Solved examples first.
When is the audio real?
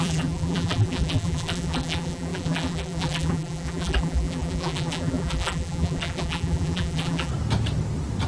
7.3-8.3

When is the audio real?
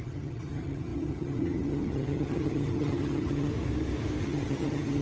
3.5-4.2